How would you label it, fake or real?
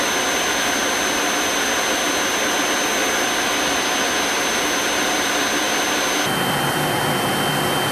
real